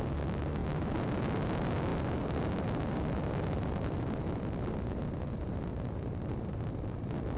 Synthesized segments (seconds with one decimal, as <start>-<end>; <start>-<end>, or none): 1.9-4.4; 5.7-6.4